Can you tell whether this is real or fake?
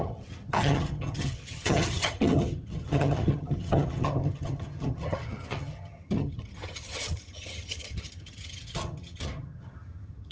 fake